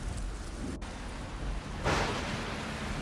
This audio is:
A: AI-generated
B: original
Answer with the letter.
B